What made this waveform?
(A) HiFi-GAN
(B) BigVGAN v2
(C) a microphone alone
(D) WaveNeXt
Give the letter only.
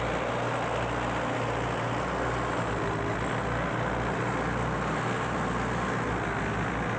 C